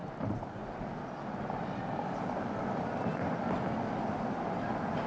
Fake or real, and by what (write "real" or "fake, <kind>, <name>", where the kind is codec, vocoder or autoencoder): real